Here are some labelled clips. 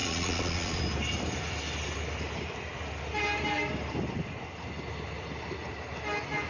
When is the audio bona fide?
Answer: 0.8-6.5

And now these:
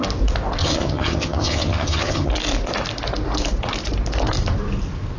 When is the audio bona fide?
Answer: 0.0-0.6; 2.3-5.2

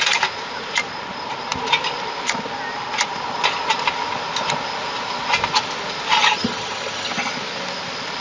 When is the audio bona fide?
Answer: 0.0-6.2; 7.3-8.2